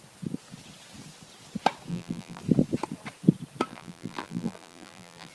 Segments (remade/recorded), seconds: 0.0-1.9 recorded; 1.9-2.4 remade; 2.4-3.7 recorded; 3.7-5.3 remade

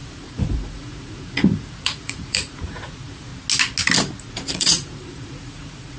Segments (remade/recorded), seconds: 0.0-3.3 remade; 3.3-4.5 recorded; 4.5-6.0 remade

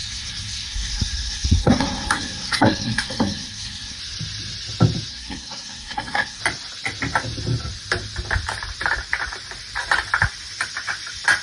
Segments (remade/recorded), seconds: 0.0-4.0 remade; 4.0-5.1 recorded; 5.1-6.4 remade; 6.4-11.4 recorded

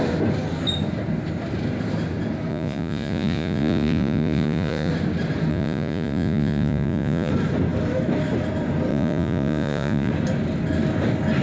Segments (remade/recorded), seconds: 0.0-2.5 recorded; 2.5-4.9 remade; 4.9-5.5 recorded; 5.5-7.3 remade; 7.3-8.9 recorded; 8.9-10.1 remade; 10.1-11.4 recorded